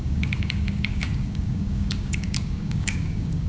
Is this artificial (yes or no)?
yes